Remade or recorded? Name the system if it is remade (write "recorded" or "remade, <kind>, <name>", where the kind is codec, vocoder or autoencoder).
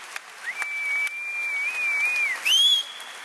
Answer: recorded